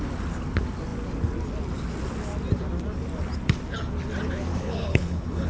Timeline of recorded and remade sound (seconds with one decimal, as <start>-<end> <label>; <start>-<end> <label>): 0.0-4.5 recorded; 4.5-5.5 remade